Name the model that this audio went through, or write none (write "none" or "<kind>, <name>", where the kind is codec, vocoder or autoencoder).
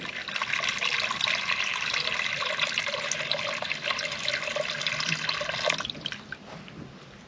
none